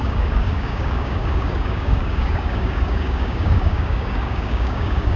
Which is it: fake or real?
fake